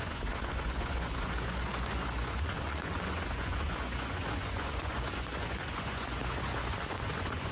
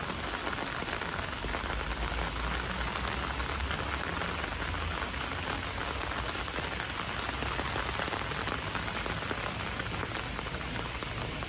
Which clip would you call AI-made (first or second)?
first